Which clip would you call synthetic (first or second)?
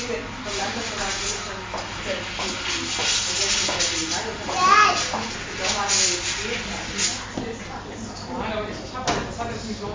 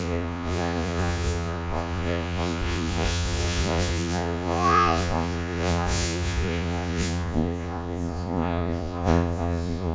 second